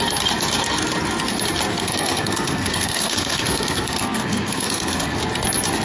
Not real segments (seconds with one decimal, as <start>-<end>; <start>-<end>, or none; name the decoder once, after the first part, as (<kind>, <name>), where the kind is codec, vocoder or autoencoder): 1.7-5.2 (codec, SNAC)

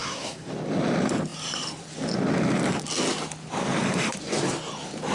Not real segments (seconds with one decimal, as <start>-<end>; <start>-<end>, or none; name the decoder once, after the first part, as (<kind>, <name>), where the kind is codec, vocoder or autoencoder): 0.0-0.5 (codec, SNAC)

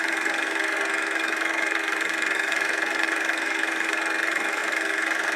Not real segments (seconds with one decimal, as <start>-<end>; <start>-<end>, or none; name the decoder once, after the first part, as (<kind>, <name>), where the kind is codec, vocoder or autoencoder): 0.0-5.4 (codec, SNAC)

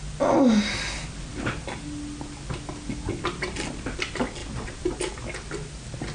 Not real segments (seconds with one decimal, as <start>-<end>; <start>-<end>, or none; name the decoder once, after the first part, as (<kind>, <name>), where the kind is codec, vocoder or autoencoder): none

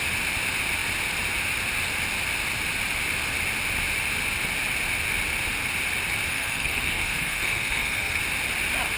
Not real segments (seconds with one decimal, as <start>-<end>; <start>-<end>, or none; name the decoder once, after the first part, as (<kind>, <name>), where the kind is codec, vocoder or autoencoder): 6.3-8.2 (codec, SNAC)

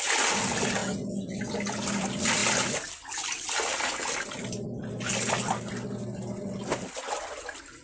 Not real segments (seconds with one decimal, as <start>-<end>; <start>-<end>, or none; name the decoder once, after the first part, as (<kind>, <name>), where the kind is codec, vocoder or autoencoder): none

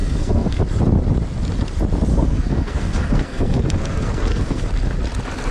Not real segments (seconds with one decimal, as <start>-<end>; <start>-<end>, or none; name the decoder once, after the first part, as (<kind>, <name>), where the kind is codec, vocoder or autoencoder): 0.0-0.6 (codec, SNAC); 2.1-4.7

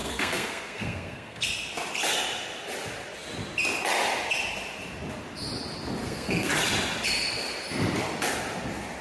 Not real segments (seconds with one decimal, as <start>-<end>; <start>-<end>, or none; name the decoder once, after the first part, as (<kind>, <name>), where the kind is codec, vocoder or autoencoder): 0.0-1.4 (codec, SNAC); 6.0-6.5